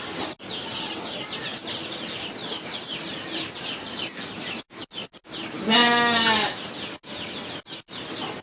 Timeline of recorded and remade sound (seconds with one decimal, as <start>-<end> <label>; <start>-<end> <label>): 0.0-8.4 recorded